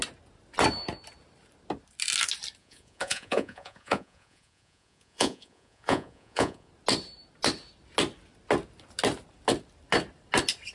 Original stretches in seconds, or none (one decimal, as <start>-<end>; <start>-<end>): 0.0-2.6; 6.7-10.7